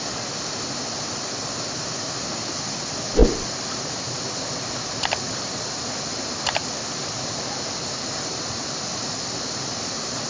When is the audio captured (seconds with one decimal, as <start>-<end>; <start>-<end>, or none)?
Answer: 0.0-10.3